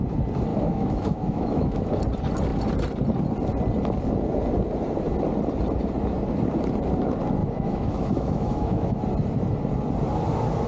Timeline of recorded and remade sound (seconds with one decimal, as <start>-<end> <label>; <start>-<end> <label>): 0.0-0.5 recorded; 0.5-1.9 remade; 1.9-7.4 recorded; 7.4-9.0 remade; 9.0-10.7 recorded